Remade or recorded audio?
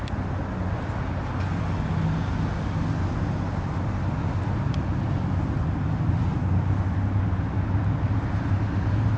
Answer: recorded